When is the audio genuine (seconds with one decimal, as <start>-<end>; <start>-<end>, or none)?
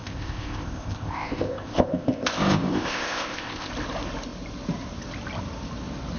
3.7-6.2